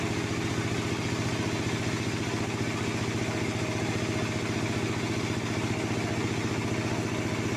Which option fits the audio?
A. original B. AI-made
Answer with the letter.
A